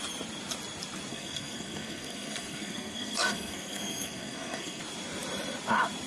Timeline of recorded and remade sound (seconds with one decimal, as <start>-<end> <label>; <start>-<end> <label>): 0.0-1.1 recorded; 1.1-4.8 remade; 4.8-6.1 recorded